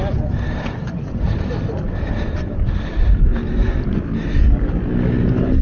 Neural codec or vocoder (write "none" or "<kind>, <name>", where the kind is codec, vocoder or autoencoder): none